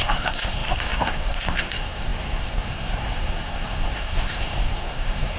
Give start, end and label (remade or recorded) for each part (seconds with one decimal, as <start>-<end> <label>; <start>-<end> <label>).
0.0-5.4 remade